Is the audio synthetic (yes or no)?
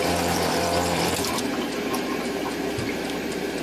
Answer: yes